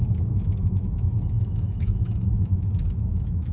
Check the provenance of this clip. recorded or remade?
remade